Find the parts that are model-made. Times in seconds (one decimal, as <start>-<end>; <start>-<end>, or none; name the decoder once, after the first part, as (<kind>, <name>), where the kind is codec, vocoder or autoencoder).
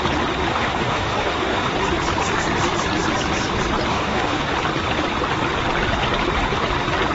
0.5-1.7 (autoencoder, DAC-VAE); 3.9-4.5